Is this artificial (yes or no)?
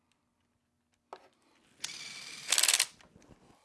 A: no